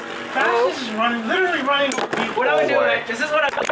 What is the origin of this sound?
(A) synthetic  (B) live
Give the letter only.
B